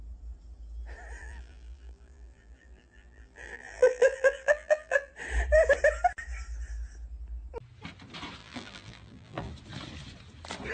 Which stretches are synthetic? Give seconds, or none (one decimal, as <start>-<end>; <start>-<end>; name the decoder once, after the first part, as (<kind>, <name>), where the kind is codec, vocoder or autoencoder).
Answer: 1.2-5.1 (vocoder, BigVGAN v2); 8.4-9.5